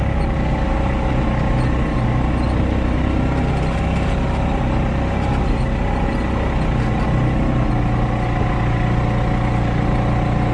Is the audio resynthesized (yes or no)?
no